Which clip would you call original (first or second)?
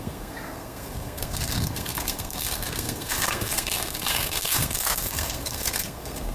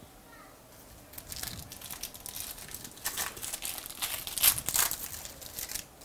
second